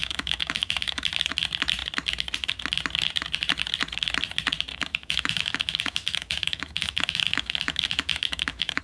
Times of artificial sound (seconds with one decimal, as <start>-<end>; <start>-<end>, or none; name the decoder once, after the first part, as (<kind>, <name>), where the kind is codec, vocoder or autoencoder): 0.0-1.1 (autoencoder, DAC-VAE); 4.7-8.8